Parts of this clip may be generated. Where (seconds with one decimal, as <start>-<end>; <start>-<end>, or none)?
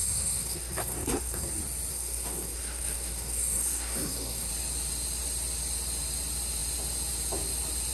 0.0-1.5; 1.9-4.5